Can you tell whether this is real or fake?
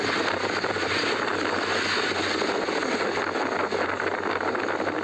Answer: real